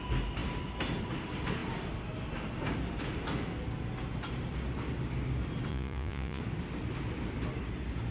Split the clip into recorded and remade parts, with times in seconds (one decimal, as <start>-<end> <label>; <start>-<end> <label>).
0.0-5.7 recorded; 5.7-6.4 remade; 6.4-8.1 recorded